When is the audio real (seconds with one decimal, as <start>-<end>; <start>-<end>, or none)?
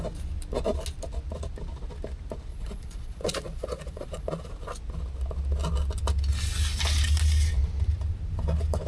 0.0-2.5; 4.5-8.9